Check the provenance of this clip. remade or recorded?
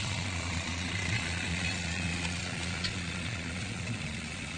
remade